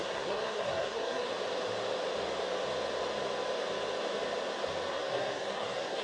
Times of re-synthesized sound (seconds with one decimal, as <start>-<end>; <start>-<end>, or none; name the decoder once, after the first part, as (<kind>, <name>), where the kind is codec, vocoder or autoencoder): 0.0-1.3 (codec, SNAC); 4.9-6.0